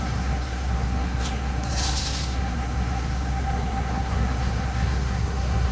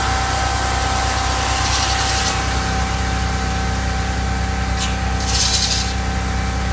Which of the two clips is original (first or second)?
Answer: second